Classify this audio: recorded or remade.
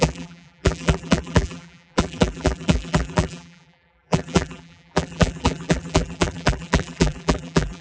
remade